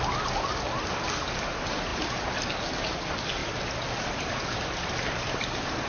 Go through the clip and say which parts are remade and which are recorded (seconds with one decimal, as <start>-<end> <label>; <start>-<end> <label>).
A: 0.0-5.9 recorded